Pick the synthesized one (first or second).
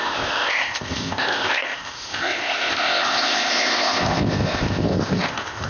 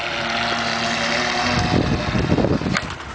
first